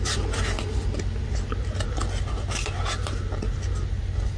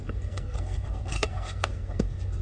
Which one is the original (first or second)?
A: first